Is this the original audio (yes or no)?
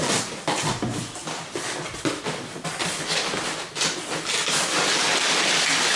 yes